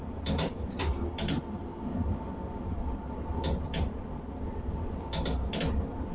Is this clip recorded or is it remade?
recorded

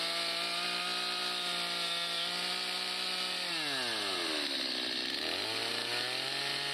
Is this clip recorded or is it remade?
recorded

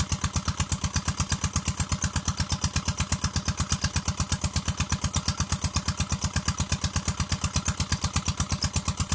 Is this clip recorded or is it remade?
recorded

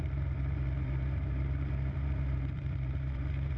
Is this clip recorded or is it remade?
remade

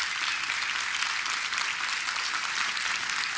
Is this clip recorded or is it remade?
recorded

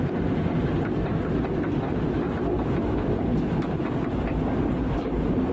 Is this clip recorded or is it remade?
recorded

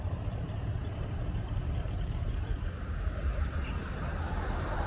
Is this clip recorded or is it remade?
remade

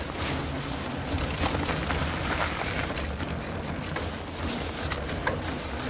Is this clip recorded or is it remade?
recorded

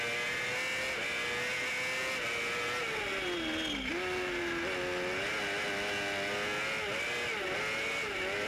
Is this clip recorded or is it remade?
recorded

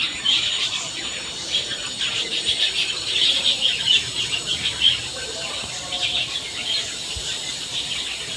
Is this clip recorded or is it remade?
remade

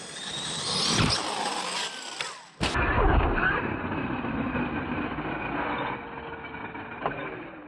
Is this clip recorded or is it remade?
recorded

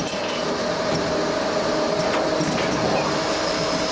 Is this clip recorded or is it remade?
remade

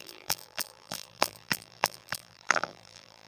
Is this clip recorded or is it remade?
remade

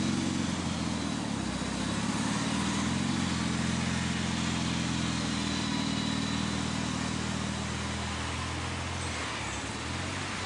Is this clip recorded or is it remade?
recorded